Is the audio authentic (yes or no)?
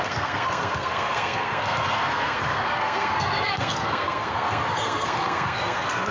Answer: no